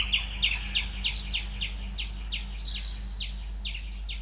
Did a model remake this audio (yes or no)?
no